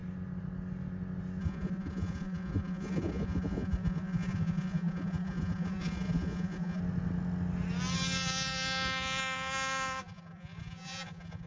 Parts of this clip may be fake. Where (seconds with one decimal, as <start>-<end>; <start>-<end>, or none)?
1.4-6.8; 10.0-11.5